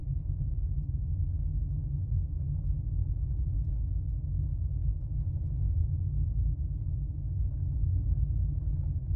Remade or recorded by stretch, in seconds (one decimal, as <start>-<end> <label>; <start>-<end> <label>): 0.0-1.2 remade; 1.2-9.2 recorded